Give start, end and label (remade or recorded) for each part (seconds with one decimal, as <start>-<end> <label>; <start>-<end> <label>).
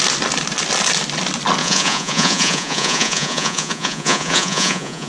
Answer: 0.0-1.6 recorded; 1.6-5.1 remade